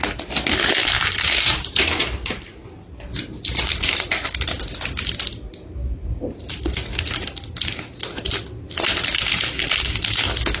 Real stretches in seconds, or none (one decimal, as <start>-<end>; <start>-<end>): 0.0-0.8; 3.1-10.6

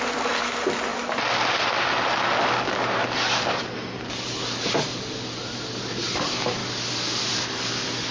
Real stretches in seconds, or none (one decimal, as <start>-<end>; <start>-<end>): 0.0-8.1

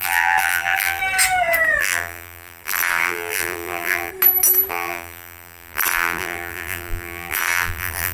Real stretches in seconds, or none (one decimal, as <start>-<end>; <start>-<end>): 1.0-1.8; 4.1-4.7

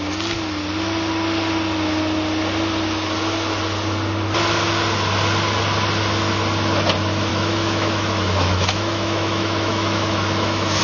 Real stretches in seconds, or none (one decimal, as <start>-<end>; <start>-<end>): 0.0-7.3

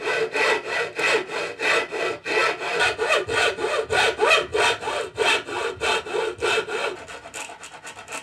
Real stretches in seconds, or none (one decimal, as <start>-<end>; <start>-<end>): 0.0-8.2